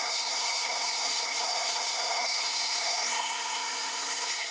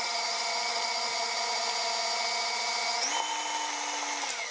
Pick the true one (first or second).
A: second